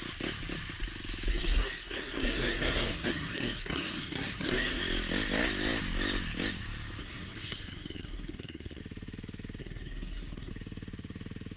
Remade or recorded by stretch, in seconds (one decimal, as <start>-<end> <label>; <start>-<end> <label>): 0.0-1.3 recorded; 1.3-4.8 remade; 4.8-7.0 recorded; 7.0-8.8 remade; 8.8-9.6 recorded; 9.6-10.5 remade; 10.5-11.6 recorded